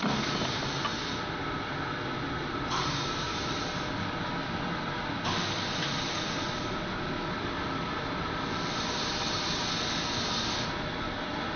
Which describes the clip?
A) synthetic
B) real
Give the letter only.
B